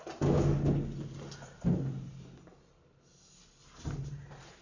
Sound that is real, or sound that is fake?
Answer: real